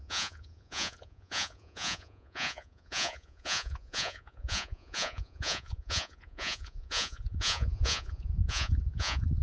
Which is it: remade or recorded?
remade